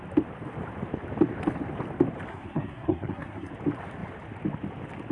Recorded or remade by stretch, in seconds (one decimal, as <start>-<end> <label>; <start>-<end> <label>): 0.0-2.3 recorded; 2.3-3.5 remade; 3.5-5.1 recorded